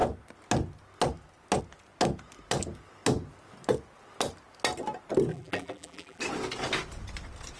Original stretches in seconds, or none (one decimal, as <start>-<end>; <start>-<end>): 0.0-5.3; 6.2-7.6